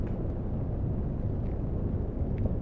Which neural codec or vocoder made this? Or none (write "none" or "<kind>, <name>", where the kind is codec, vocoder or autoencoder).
none